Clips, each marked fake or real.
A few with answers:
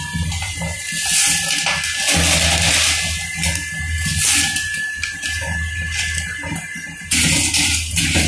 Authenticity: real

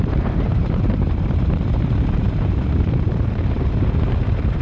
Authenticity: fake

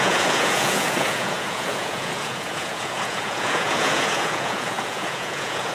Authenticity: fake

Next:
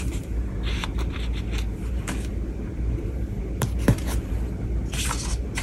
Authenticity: fake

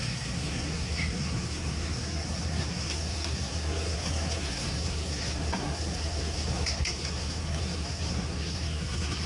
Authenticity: fake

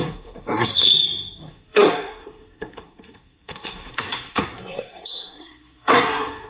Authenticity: fake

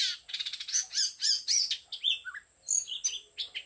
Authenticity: real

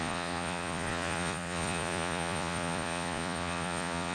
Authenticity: fake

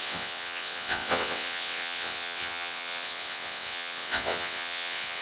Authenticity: fake